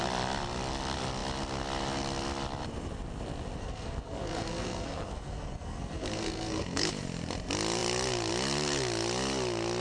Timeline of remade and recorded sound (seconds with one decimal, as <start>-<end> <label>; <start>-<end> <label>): 0.0-3.6 recorded; 3.6-6.9 remade; 6.9-9.8 recorded